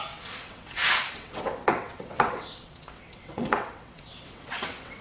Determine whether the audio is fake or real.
fake